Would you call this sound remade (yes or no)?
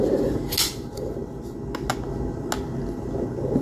no